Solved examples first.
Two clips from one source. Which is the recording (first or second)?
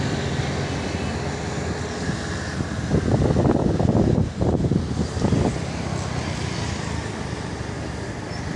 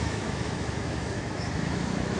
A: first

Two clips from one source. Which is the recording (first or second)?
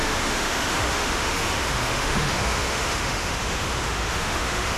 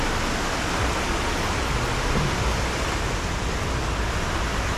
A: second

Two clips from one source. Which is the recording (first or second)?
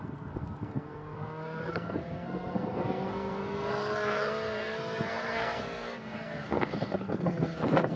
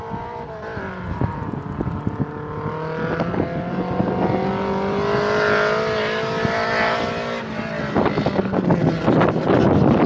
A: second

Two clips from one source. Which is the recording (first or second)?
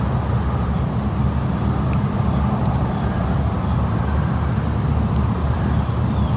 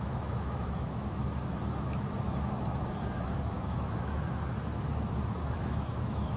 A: first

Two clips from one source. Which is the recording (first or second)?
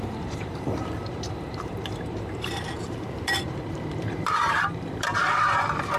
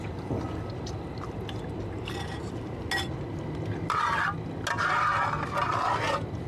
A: second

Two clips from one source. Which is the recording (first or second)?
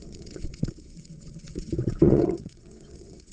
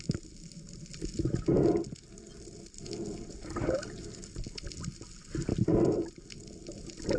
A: second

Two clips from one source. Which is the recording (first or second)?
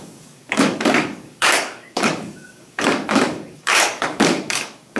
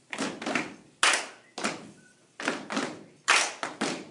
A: second